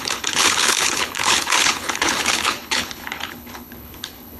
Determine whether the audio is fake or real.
fake